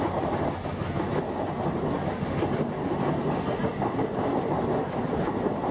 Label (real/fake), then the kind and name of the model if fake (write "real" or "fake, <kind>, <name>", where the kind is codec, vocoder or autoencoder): real